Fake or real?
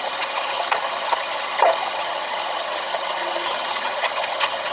fake